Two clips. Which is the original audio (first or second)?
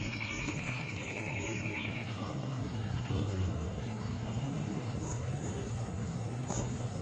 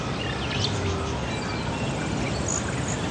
second